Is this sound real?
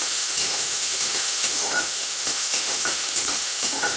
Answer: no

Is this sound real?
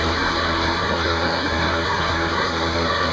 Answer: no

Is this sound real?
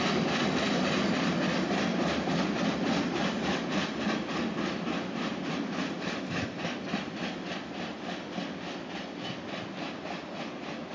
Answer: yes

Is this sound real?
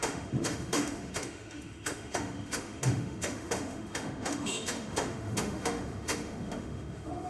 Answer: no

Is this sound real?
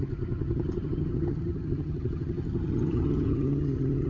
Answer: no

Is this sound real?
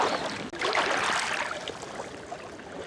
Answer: yes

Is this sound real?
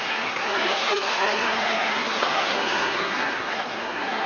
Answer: no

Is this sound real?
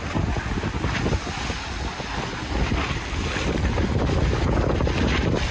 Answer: yes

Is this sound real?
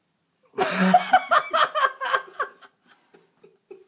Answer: yes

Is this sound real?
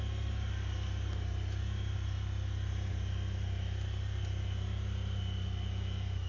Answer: yes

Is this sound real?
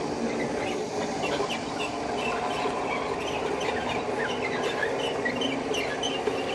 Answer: yes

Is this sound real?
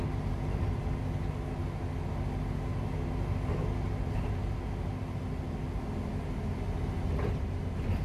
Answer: yes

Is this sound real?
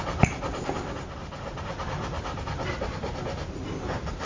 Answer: yes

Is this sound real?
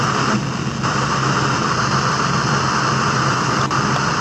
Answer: yes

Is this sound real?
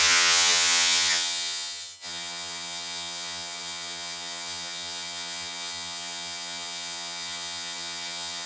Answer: no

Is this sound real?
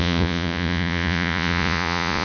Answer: no